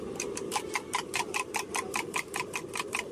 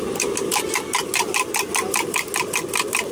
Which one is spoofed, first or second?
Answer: first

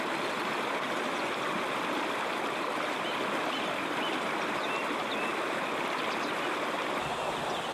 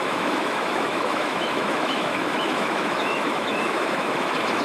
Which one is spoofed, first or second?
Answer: second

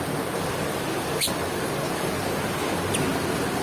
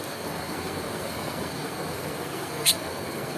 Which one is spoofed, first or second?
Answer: second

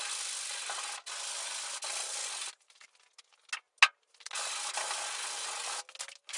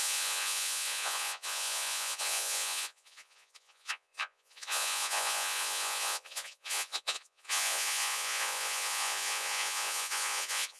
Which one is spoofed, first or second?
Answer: second